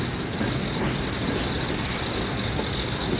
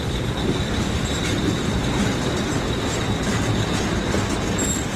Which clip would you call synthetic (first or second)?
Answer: second